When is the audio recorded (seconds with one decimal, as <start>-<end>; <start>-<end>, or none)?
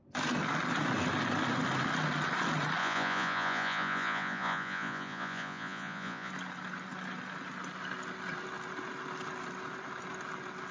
0.0-2.8; 6.3-10.7